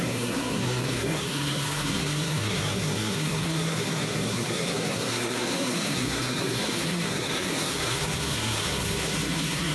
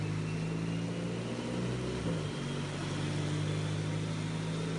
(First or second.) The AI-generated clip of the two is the first